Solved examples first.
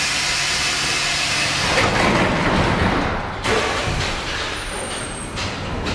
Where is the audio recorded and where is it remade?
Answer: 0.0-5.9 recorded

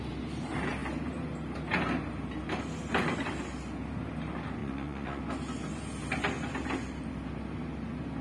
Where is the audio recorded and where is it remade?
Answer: 0.0-4.6 recorded; 4.6-5.2 remade; 5.2-8.2 recorded

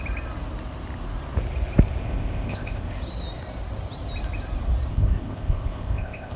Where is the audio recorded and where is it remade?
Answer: 0.0-2.0 recorded; 2.0-2.9 remade; 2.9-4.9 recorded; 4.9-6.4 remade